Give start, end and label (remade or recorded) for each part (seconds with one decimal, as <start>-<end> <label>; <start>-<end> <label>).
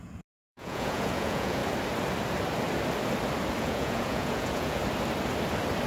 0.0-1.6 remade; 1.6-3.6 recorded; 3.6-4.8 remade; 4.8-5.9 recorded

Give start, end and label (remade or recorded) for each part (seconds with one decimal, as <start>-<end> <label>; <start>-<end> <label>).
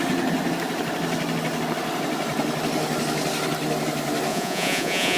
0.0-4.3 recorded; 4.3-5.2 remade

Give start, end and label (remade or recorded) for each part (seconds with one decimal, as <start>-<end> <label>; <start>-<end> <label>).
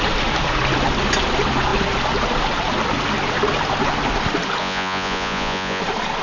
0.0-4.6 recorded; 4.6-5.8 remade; 5.8-6.2 recorded